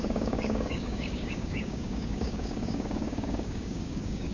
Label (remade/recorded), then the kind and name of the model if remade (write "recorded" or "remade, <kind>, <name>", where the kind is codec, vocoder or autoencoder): remade, codec, DAC